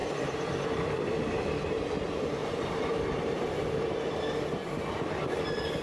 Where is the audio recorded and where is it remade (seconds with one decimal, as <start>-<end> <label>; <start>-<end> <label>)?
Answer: 0.0-0.6 remade; 0.6-2.4 recorded; 2.4-3.0 remade; 3.0-5.8 recorded